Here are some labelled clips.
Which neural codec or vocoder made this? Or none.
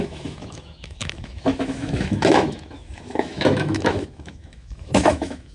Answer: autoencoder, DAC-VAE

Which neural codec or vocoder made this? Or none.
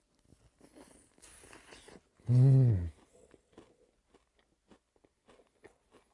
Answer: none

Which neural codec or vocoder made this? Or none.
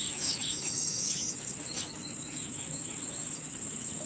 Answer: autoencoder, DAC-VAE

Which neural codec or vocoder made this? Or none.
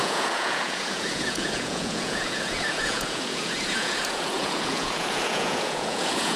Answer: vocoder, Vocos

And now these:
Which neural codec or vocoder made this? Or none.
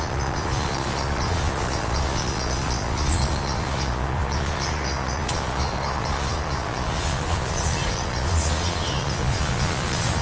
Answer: vocoder, Vocos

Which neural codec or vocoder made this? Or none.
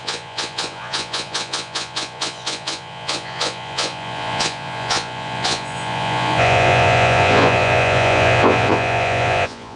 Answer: vocoder, Vocos